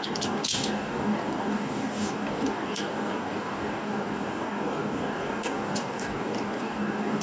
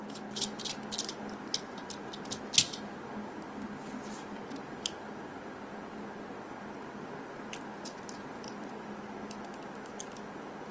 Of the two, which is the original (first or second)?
second